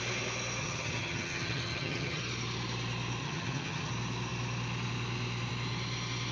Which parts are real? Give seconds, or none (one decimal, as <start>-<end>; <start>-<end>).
0.0-0.6; 2.2-3.2; 3.9-6.3